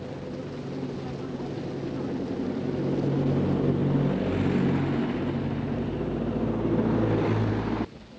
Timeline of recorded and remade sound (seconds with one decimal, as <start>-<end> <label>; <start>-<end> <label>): 0.0-8.2 recorded